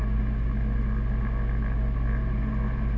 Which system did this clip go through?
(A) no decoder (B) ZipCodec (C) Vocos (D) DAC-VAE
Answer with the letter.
A